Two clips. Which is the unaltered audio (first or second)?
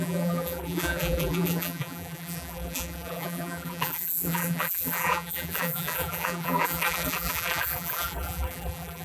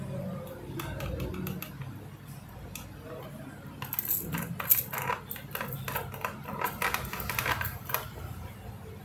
second